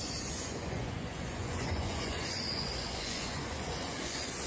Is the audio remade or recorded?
remade